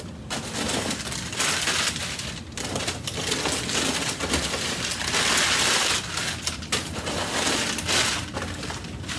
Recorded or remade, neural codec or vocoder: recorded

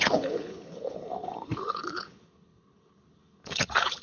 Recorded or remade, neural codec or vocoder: remade, codec, HILCodec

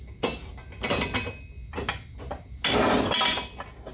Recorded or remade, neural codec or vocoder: recorded